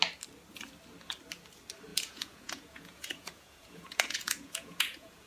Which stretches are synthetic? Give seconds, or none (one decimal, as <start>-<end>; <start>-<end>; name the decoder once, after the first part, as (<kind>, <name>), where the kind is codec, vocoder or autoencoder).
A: 1.9-5.3 (vocoder, Vocos)